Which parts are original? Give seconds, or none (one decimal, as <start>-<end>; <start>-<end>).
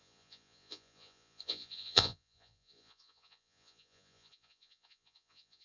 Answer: none